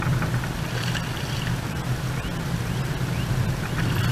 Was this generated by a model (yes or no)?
no